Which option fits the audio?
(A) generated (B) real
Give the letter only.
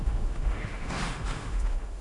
A